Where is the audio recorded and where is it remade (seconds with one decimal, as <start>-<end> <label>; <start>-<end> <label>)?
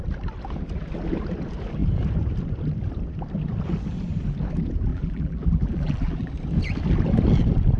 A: 0.0-4.9 recorded; 4.9-6.3 remade; 6.3-7.8 recorded